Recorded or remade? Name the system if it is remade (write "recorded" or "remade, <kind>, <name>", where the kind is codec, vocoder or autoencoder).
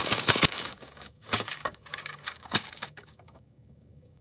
remade, codec, DAC